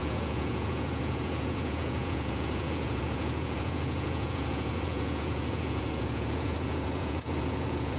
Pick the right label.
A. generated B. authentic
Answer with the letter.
A